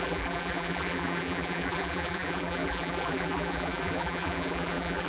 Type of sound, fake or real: fake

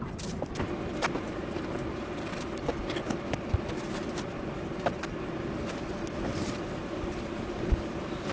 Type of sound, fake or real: real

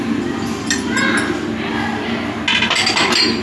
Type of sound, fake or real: real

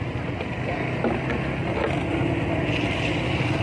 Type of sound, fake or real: real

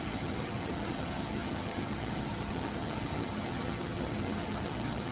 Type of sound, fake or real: fake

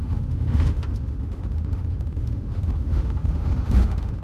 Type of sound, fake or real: fake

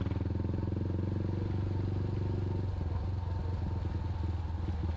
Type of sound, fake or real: real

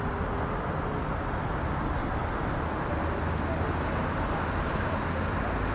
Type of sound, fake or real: real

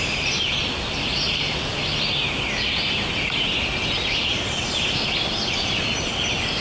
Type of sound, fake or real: real